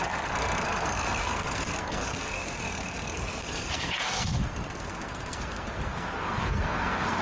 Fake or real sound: fake